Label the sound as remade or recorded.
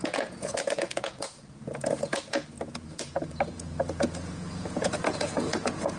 remade